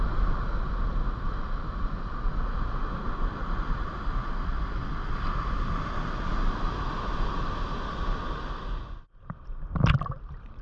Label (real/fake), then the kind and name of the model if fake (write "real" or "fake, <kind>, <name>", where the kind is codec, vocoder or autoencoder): real